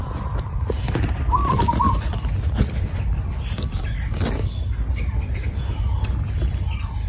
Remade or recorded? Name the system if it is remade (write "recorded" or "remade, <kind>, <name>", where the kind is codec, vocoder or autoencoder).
recorded